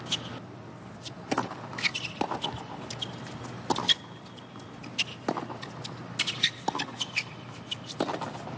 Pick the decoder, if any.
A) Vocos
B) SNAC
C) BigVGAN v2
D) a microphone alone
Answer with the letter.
D